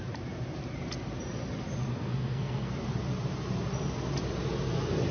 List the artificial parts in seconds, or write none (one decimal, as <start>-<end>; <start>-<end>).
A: 1.9-2.7